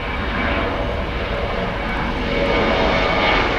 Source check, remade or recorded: recorded